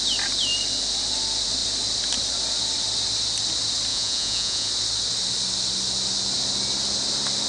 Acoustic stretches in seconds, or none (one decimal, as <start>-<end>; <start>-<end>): 0.0-3.9; 4.7-7.5